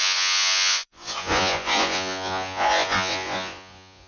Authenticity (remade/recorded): remade